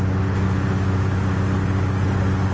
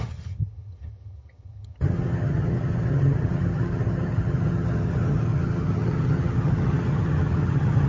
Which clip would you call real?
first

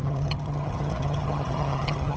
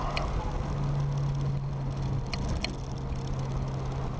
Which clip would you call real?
second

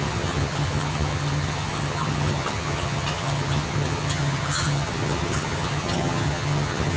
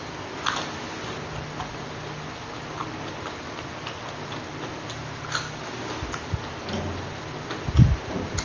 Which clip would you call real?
second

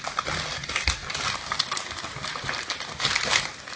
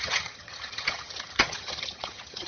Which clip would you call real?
first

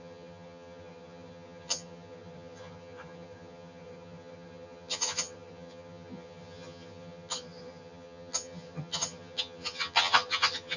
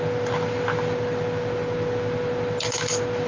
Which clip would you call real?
second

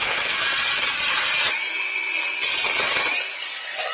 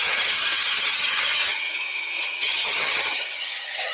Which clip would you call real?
first